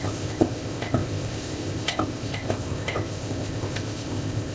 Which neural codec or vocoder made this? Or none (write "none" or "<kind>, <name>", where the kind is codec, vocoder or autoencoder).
codec, ZipCodec